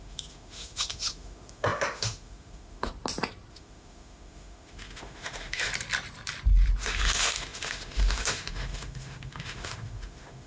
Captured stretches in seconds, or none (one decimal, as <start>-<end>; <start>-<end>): 2.9-3.5; 5.7-6.8